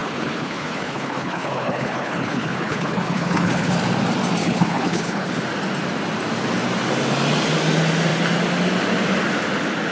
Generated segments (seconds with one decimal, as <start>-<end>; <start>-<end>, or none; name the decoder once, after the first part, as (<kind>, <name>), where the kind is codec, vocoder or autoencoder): 0.0-3.7 (codec, HILCodec); 4.4-5.3